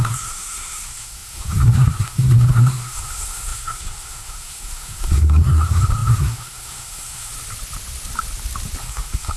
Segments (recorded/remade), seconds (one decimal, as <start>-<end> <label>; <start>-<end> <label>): 0.0-7.3 remade; 7.3-8.8 recorded; 8.8-9.4 remade